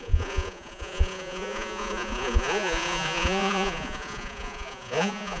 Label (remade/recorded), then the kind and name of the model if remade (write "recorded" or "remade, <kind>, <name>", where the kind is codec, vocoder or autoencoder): remade, vocoder, Vocos